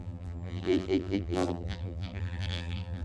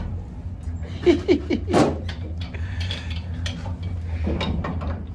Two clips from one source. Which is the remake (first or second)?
first